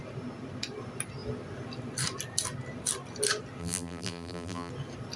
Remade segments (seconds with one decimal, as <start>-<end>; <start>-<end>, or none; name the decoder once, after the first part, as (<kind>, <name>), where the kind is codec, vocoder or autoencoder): 3.6-4.7 (vocoder, BigVGAN v2)